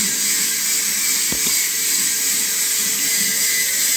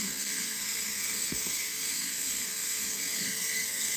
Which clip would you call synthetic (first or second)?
second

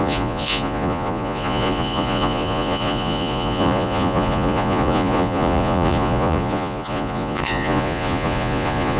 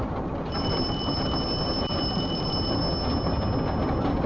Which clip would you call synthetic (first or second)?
first